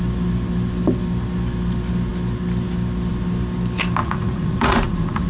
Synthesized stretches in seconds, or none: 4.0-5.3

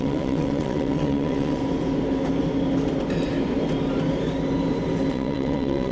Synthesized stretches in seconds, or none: 0.0-1.6; 5.1-5.9

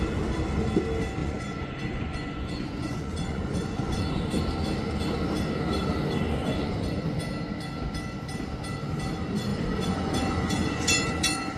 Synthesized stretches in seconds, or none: 1.2-4.4; 6.4-7.2; 9.5-11.6

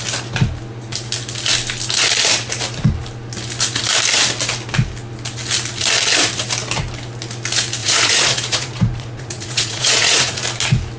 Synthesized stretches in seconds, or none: 7.8-10.4

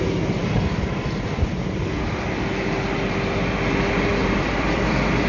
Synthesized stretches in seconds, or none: 0.4-3.1; 4.1-5.3

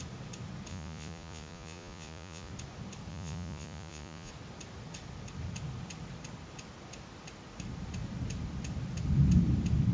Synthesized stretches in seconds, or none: 0.7-2.5; 3.1-4.3

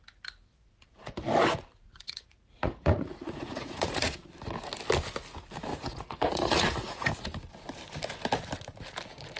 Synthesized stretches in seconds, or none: 0.5-1.2; 1.8-4.2; 5.7-7.1

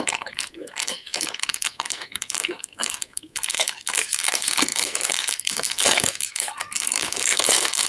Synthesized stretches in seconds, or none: 0.0-7.9